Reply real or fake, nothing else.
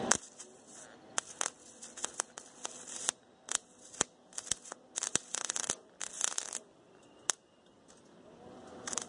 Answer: real